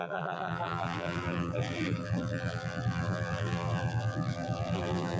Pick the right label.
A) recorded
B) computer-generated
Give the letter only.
B